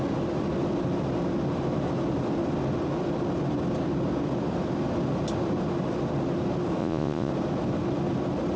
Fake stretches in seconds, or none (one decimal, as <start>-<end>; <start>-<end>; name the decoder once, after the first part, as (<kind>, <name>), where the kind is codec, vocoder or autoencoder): 6.8-7.3 (vocoder, Vocos)